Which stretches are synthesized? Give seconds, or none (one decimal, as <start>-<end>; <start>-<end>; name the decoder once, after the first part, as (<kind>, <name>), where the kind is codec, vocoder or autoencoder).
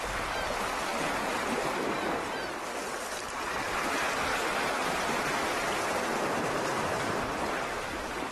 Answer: 0.9-2.5 (vocoder, BigVGAN v2); 4.3-7.3